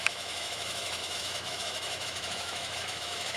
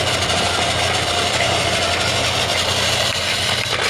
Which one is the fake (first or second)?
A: first